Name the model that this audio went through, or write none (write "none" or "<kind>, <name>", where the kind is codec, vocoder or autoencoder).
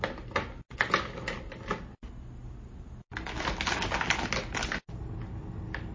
none